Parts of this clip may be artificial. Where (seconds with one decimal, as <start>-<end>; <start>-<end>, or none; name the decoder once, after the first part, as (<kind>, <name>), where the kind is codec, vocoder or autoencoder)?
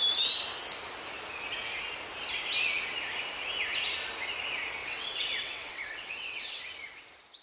4.8-6.6 (vocoder, WaveNeXt)